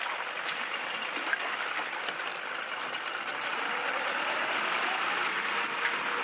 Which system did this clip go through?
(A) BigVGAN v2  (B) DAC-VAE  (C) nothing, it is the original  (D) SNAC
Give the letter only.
C